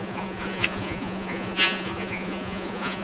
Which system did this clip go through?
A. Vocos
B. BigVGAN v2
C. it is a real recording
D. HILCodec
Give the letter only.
A